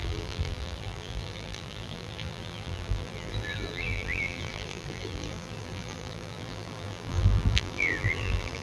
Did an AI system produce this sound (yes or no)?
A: yes